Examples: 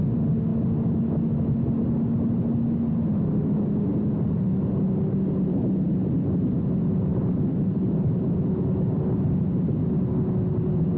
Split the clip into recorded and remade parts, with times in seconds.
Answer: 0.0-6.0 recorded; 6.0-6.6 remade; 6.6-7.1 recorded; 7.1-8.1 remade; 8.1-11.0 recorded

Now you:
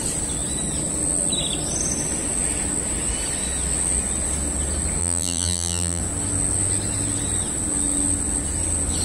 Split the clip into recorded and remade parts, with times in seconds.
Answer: 0.0-5.0 recorded; 5.0-6.0 remade; 6.0-9.0 recorded